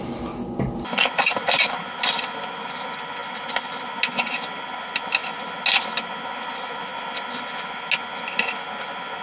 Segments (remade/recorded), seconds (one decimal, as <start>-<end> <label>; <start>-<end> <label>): 0.0-3.2 recorded; 3.2-3.8 remade; 3.8-9.2 recorded